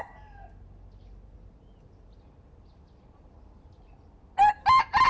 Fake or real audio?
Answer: real